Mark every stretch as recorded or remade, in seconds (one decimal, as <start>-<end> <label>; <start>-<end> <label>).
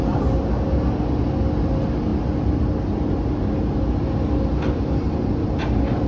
0.0-6.1 recorded